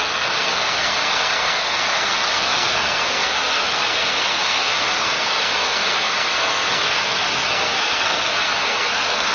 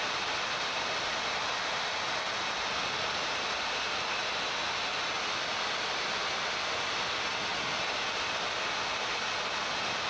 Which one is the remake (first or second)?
first